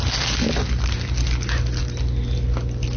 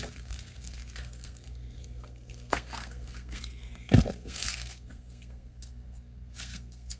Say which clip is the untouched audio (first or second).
first